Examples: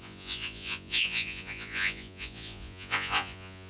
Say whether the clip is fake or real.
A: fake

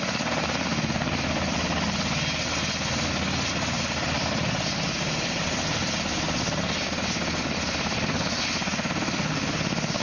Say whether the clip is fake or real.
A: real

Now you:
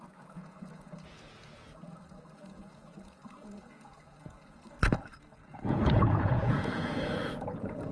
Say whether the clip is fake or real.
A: fake